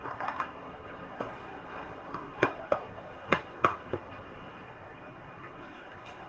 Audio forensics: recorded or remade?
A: remade